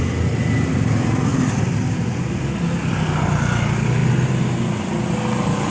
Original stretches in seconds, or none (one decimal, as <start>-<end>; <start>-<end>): 0.0-5.7